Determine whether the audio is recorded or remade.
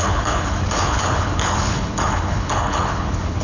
remade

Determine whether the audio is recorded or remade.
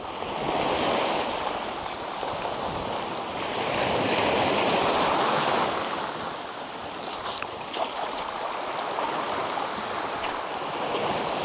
recorded